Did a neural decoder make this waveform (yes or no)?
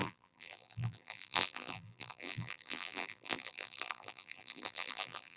yes